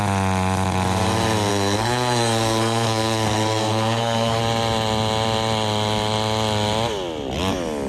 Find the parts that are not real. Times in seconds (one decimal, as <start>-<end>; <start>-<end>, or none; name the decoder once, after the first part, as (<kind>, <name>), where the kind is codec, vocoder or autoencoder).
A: 1.5-4.4 (codec, SNAC)